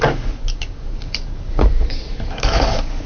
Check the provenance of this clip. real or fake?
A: fake